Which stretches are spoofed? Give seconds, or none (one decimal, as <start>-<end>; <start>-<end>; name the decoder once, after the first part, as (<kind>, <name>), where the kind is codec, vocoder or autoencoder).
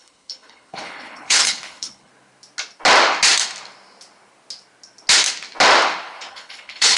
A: 0.0-2.1 (codec, HILCodec); 6.3-7.0